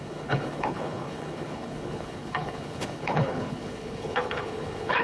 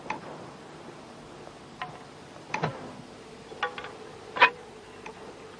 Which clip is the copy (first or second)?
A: first